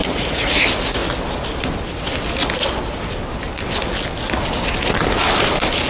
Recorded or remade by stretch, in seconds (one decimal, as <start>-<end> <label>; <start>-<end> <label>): 0.0-0.5 remade; 0.5-5.9 recorded